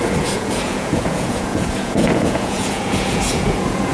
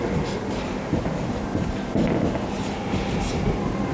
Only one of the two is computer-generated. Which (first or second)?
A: first